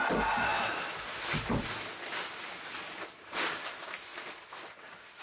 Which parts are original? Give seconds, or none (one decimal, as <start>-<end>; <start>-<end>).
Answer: 0.0-5.2